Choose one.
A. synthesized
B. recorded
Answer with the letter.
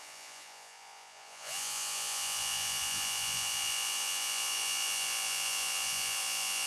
A